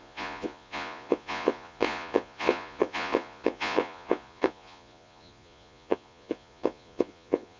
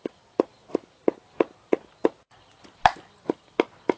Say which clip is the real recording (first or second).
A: second